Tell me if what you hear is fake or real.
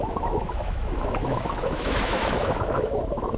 fake